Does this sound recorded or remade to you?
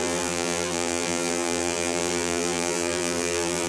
remade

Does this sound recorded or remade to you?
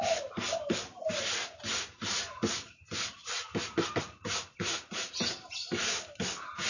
recorded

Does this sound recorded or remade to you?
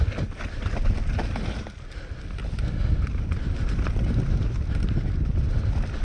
recorded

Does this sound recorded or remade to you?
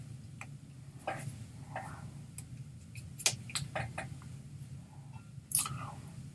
recorded